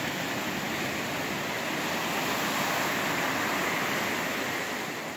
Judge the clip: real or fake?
real